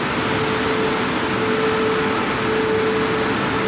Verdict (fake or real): real